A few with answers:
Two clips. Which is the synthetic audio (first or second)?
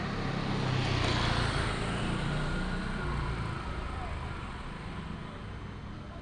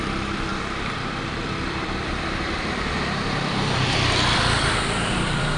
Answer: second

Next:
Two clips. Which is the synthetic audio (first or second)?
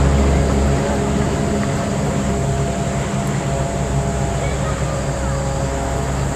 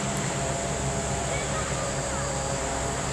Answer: second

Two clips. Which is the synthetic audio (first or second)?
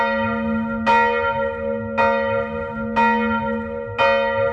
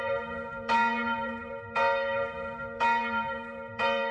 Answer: second